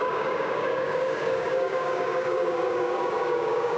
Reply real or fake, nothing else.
fake